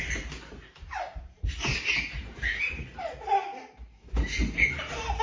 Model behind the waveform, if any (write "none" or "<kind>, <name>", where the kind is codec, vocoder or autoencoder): vocoder, BigVGAN v2